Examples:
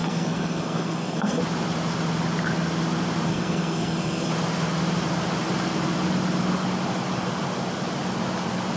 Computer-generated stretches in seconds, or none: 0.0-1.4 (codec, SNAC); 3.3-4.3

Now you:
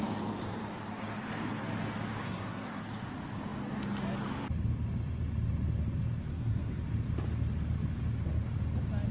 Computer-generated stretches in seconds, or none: 2.2-2.8 (codec, SNAC); 6.3-6.8